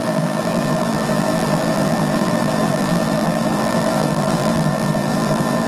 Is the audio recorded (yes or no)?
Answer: no